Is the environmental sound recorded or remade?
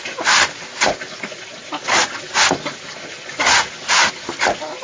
recorded